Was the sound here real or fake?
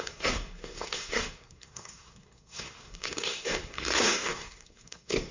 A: fake